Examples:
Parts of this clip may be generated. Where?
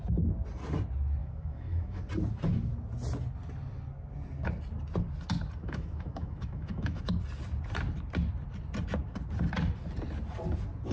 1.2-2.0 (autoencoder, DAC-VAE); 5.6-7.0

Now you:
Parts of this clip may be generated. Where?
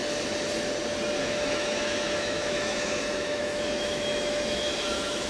1.2-5.3 (autoencoder, DAC-VAE)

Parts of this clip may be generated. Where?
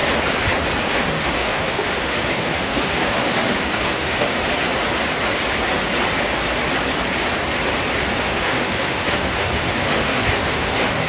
0.8-4.4 (autoencoder, DAC-VAE); 8.2-11.1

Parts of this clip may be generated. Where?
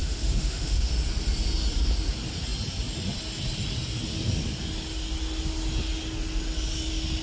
0.0-0.9 (autoencoder, DAC-VAE)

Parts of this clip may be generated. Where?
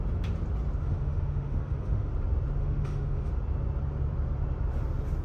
0.8-2.1 (autoencoder, DAC-VAE); 2.6-3.3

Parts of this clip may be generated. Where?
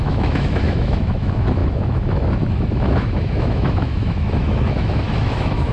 0.0-5.7 (autoencoder, DAC-VAE)